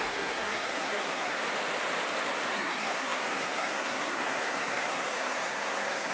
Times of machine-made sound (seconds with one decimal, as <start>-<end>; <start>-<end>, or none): 0.0-1.4; 2.5-6.1